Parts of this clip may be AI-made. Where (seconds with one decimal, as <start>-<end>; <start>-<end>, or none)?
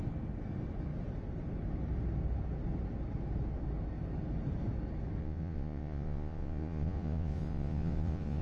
5.2-8.4